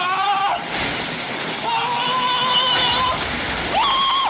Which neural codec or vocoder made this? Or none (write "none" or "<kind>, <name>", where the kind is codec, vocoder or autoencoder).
none